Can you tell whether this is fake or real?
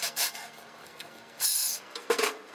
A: fake